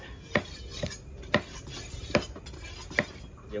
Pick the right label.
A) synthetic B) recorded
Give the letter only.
B